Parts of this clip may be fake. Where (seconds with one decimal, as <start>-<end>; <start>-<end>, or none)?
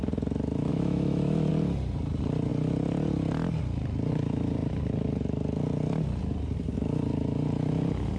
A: 0.7-1.5